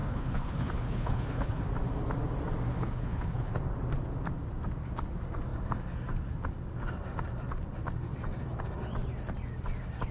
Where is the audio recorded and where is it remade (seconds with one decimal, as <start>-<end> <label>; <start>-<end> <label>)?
0.0-1.6 remade; 1.6-2.8 recorded; 2.8-3.5 remade; 3.5-10.1 recorded